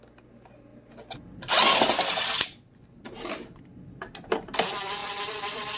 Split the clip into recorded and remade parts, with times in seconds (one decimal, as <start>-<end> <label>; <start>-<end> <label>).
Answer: 0.0-5.0 recorded; 5.0-5.8 remade